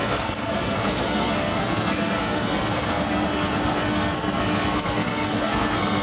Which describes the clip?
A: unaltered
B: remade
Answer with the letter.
B